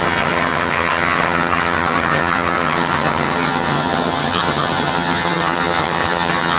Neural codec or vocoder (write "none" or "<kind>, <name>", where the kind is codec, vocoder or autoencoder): vocoder, HiFi-GAN